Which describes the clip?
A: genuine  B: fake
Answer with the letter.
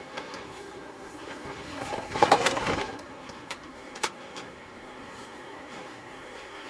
B